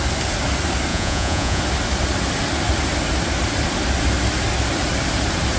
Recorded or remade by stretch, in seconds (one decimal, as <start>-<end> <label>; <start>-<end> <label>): 0.0-0.9 recorded; 0.9-1.6 remade; 1.6-5.6 recorded